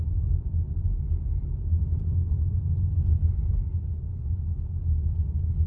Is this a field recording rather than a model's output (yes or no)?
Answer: yes